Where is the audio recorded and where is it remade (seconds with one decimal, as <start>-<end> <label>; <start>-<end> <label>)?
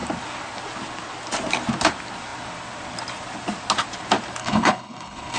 0.0-4.4 recorded; 4.4-5.4 remade